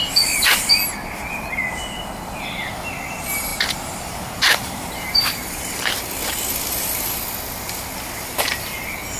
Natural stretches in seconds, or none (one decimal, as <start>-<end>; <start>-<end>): 0.0-3.5; 6.0-9.2